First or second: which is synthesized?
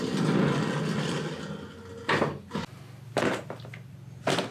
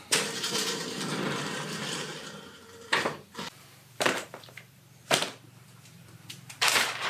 second